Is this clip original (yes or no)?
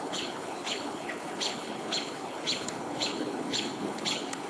no